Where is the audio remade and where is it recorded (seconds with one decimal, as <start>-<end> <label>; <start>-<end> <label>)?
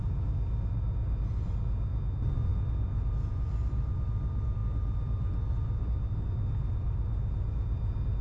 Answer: 0.0-8.2 recorded